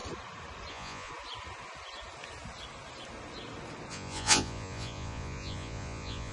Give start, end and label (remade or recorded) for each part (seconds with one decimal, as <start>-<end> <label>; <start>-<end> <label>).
0.0-0.7 recorded; 0.7-1.1 remade; 1.1-3.9 recorded; 3.9-6.3 remade